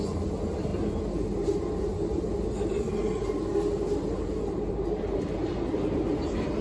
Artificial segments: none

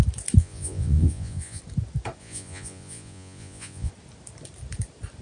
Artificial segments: 0.4-1.6 (vocoder, Vocos); 2.2-3.9

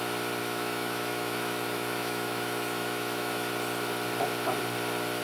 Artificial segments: 0.4-3.5 (autoencoder, DAC-VAE)

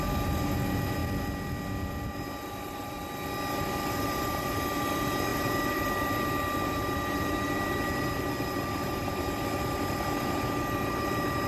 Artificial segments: 0.0-1.0 (vocoder, BigVGAN v2); 1.9-3.0; 3.9-11.5

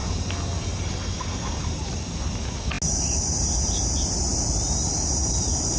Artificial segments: 1.6-2.3 (vocoder, BigVGAN v2)

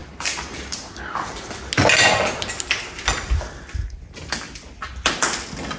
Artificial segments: 0.0-1.0 (vocoder, BigVGAN v2)

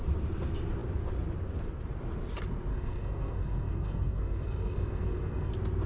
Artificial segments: 2.7-5.5 (codec, SNAC)